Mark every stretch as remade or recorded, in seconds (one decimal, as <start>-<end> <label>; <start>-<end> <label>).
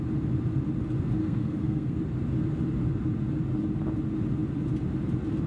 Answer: 0.0-1.2 recorded; 1.2-2.0 remade; 2.0-5.5 recorded